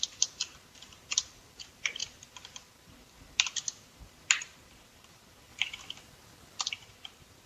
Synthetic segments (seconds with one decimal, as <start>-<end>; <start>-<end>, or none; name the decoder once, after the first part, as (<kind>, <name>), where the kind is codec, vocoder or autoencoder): 0.0-5.5 (vocoder, BigVGAN v2); 6.6-7.5